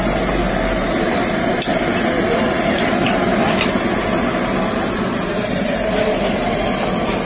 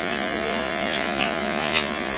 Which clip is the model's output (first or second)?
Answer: second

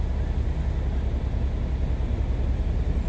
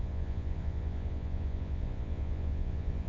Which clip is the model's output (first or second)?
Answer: second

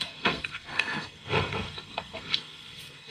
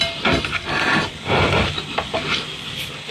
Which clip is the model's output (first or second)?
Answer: first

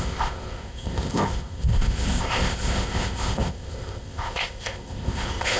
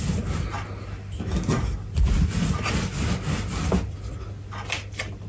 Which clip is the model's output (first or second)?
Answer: first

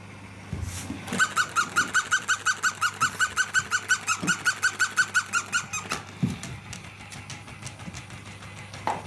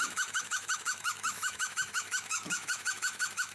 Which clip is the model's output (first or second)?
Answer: second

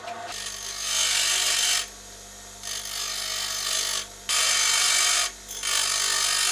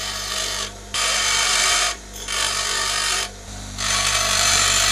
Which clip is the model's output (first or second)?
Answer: second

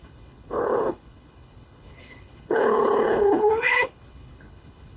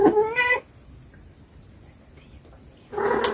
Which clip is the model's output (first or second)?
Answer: first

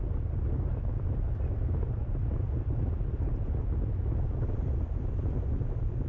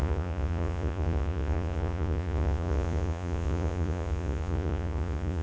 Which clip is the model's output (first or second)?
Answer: second